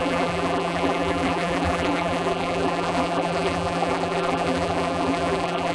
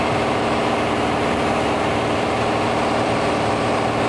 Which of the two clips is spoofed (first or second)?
first